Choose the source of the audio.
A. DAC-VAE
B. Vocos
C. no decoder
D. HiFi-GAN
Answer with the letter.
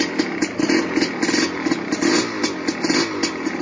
C